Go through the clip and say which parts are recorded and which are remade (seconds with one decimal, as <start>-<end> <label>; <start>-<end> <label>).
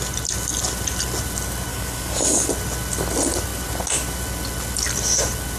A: 0.0-1.7 recorded; 1.7-2.5 remade; 2.5-5.6 recorded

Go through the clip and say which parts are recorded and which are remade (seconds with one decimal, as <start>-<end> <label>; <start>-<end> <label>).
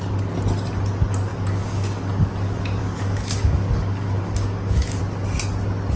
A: 0.0-1.3 recorded; 1.3-2.3 remade; 2.3-2.8 recorded; 2.8-5.0 remade; 5.0-6.0 recorded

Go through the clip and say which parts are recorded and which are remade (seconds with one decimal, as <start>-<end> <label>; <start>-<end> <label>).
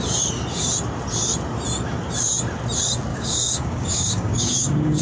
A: 0.0-3.1 recorded; 3.1-5.0 remade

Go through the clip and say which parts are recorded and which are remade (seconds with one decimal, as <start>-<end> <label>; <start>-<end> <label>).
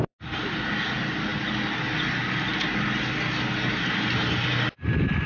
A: 0.0-5.3 recorded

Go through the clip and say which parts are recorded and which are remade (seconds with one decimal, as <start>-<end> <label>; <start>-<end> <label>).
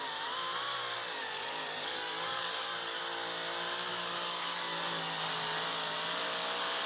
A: 0.0-1.2 recorded; 1.2-3.0 remade; 3.0-3.9 recorded; 3.9-5.3 remade; 5.3-6.9 recorded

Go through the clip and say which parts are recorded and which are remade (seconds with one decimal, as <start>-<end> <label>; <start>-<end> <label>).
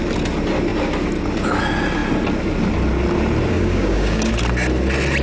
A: 0.0-3.5 recorded; 3.5-4.3 remade; 4.3-5.2 recorded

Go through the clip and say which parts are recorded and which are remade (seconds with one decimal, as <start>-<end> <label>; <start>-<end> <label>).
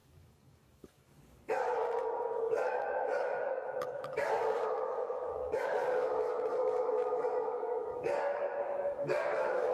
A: 0.0-9.7 remade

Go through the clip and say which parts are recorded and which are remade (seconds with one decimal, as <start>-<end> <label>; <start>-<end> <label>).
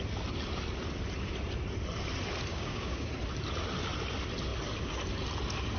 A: 0.0-2.5 recorded; 2.5-3.1 remade; 3.1-5.8 recorded